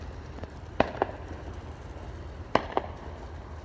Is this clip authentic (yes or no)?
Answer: yes